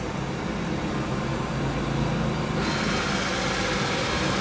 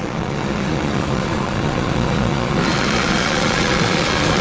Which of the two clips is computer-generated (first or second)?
second